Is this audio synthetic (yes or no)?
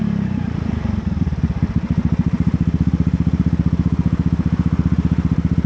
yes